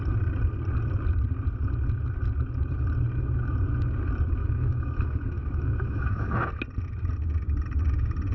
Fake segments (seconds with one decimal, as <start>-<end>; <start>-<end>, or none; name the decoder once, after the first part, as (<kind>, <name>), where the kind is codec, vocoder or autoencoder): 4.4-6.5 (autoencoder, DAC-VAE)